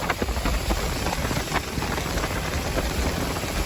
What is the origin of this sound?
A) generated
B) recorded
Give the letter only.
A